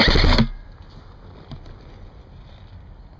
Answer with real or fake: real